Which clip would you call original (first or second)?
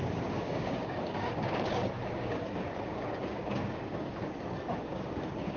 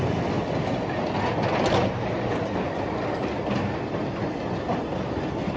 second